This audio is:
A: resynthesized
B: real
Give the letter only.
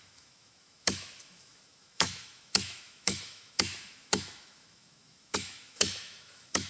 A